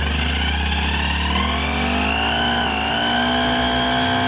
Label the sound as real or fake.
real